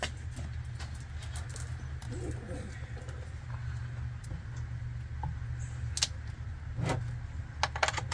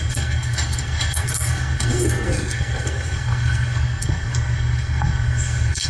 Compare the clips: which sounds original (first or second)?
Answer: first